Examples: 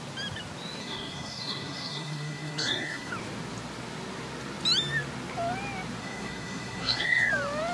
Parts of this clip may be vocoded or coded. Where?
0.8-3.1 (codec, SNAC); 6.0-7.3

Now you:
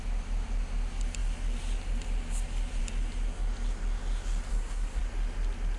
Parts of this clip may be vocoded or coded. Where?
4.5-5.0 (codec, SNAC)

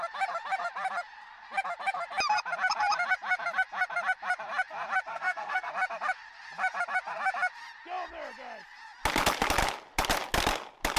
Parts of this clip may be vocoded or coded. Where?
5.1-5.7 (codec, SNAC)

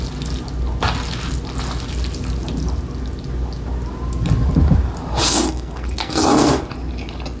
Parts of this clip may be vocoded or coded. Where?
5.2-6.6 (codec, SNAC)